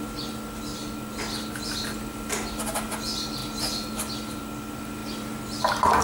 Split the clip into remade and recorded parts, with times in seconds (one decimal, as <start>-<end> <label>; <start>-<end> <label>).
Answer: 0.0-6.0 recorded